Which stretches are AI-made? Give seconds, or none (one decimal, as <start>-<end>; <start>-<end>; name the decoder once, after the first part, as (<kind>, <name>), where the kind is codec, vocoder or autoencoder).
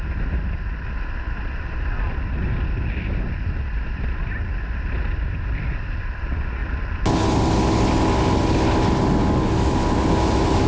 none